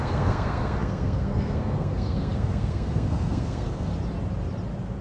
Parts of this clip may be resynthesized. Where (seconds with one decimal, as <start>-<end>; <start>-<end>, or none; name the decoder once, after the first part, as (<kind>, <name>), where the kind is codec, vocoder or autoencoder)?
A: 0.0-3.9 (codec, SNAC)